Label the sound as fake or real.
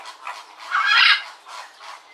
real